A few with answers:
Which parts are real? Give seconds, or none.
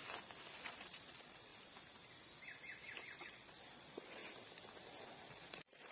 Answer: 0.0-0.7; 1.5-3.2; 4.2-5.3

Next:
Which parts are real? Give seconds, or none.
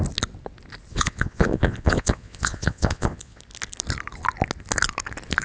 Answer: 0.0-0.9; 3.4-5.4